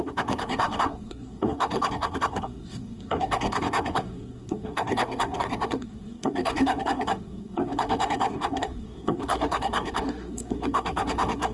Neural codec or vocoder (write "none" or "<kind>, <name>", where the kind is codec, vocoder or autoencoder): codec, SNAC